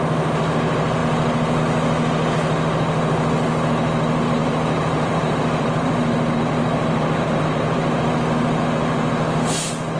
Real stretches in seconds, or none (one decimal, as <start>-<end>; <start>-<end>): 0.0-4.4; 8.0-10.0